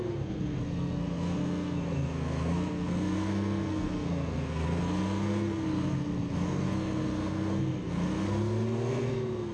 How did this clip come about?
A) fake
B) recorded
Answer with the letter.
A